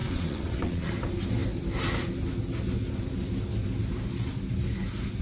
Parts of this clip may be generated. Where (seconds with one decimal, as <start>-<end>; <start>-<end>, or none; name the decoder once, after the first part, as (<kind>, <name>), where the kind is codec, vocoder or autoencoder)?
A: 0.0-0.9 (vocoder, WaveNeXt)